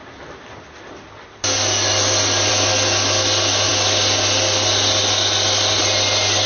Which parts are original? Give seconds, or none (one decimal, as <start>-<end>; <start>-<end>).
0.0-6.5